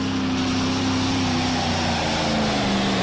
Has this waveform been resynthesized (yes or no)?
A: no